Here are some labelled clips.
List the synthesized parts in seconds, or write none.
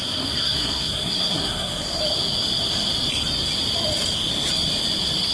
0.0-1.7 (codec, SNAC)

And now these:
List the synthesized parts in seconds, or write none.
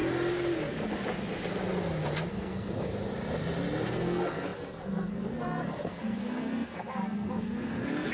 2.3-2.9 (codec, SNAC); 3.9-8.1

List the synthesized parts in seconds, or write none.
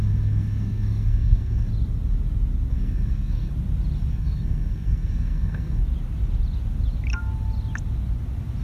0.0-1.7 (codec, SNAC); 2.7-3.5; 4.1-5.8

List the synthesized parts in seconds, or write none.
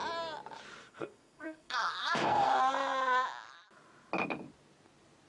0.8-2.6 (codec, SNAC)